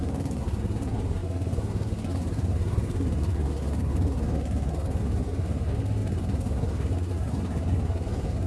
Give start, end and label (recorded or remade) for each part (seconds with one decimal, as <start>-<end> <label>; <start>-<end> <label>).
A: 0.0-8.5 remade